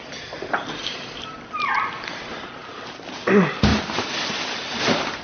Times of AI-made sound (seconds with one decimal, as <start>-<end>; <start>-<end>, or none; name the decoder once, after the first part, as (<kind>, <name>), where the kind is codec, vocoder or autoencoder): 0.0-2.6 (vocoder, BigVGAN v2); 3.2-3.7; 4.8-5.2